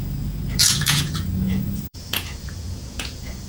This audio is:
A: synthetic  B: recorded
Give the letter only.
A